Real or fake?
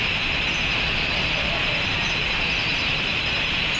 real